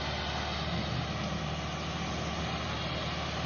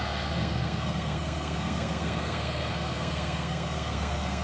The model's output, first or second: second